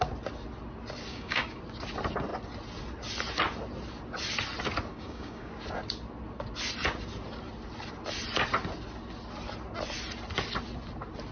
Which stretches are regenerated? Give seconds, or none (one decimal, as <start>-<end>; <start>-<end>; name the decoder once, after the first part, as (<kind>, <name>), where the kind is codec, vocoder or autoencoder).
1.1-1.6 (codec, DAC); 4.9-5.5